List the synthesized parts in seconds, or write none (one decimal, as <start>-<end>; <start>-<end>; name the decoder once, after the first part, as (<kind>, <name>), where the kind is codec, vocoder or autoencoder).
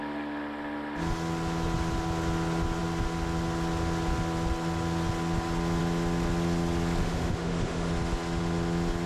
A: 7.0-7.9 (autoencoder, DAC-VAE)